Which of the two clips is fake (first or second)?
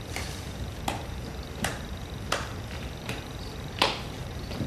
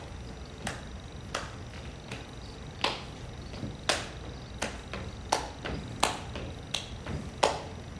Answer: first